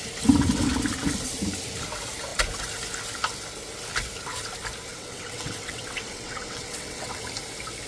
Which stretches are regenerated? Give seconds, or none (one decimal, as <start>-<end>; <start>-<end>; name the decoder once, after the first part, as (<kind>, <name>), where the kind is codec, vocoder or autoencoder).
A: 4.9-7.2 (vocoder, WaveNeXt)